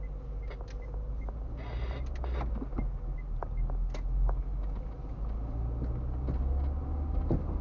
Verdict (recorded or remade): recorded